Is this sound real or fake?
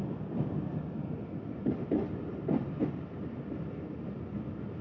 real